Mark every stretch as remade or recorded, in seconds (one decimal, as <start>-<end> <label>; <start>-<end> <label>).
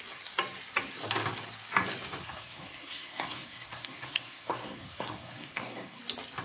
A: 0.0-2.2 recorded; 2.2-6.0 remade; 6.0-6.4 recorded